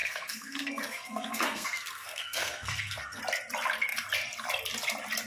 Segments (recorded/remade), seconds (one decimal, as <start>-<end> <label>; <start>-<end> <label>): 0.0-3.2 remade; 3.2-5.3 recorded